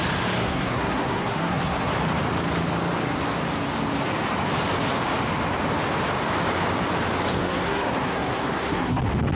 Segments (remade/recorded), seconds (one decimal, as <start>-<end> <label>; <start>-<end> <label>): 0.0-0.4 recorded; 0.4-1.9 remade; 1.9-7.4 recorded; 7.4-9.0 remade; 9.0-9.4 recorded